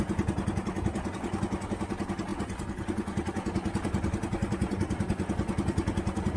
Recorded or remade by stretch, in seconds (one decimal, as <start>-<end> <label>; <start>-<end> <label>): 0.0-6.4 recorded